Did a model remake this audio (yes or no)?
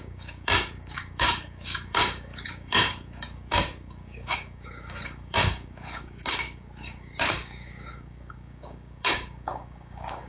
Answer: yes